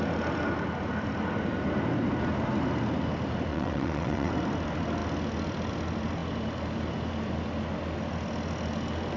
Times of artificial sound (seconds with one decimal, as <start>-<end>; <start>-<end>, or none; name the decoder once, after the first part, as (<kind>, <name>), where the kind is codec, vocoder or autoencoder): 3.5-4.3 (vocoder, WaveNeXt)

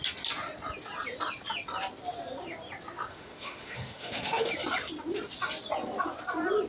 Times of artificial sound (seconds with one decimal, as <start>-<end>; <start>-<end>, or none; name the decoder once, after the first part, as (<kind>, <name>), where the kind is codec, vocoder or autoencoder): 3.1-4.5 (autoencoder, DAC-VAE)

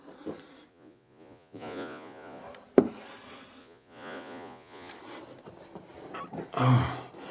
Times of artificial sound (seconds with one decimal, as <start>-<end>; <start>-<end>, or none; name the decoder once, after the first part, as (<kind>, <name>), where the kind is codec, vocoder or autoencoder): 0.7-2.4 (vocoder, Vocos); 3.6-4.9